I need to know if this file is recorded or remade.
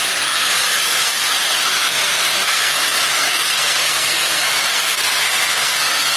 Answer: remade